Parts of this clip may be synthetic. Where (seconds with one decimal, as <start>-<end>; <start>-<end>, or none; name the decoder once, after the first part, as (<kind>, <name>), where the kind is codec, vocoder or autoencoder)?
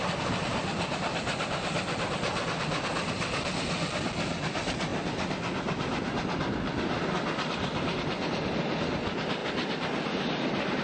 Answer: none